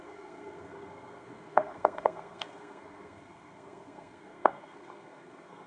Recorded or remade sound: remade